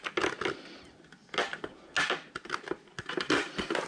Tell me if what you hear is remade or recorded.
recorded